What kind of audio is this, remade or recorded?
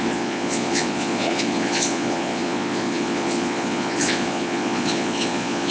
remade